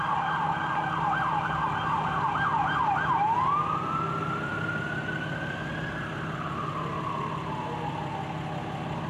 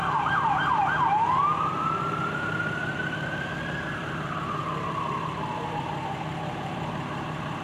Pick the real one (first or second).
first